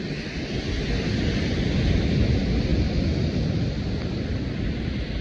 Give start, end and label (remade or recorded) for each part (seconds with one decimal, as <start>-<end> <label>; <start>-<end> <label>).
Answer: 0.0-5.2 recorded